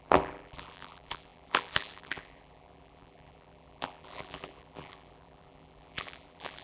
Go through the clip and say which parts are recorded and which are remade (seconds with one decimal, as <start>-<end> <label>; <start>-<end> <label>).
0.0-6.6 remade